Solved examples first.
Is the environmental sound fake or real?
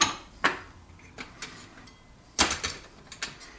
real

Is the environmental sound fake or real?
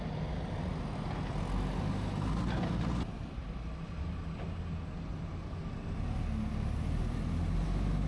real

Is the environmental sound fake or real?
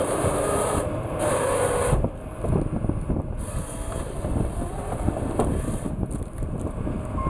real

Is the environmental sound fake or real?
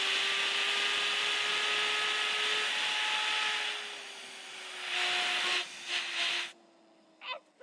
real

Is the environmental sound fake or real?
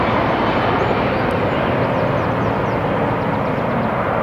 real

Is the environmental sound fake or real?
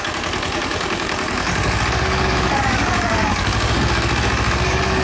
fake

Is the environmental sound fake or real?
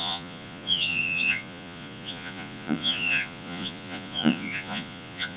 fake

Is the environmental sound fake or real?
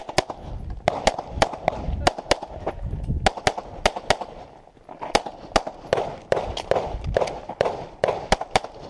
real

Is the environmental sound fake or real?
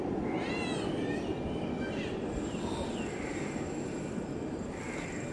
real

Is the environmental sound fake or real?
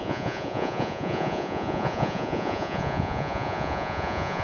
fake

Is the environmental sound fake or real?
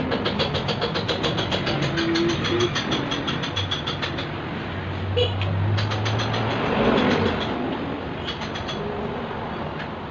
real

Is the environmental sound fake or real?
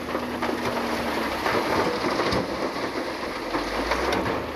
real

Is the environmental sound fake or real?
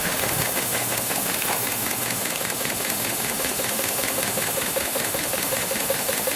fake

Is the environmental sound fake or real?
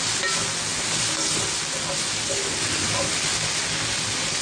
real